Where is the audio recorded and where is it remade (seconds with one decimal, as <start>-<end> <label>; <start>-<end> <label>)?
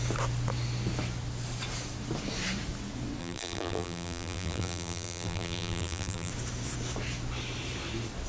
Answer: 0.0-3.2 recorded; 3.2-6.3 remade; 6.3-8.3 recorded